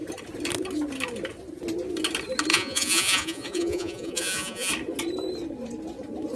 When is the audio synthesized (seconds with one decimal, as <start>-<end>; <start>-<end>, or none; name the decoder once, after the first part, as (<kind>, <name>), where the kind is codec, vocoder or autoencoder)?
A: 2.5-4.7 (vocoder, Vocos)